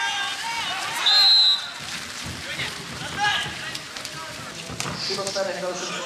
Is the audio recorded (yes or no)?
yes